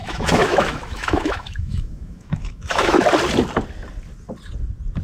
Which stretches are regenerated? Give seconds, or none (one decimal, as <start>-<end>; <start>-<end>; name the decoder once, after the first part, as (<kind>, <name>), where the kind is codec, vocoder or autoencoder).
0.0-3.0 (autoencoder, DAC-VAE)